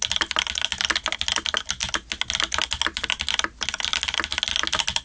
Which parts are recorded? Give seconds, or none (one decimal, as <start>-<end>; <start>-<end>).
0.0-5.0